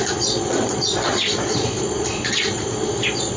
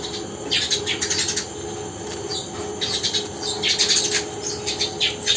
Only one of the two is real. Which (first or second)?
second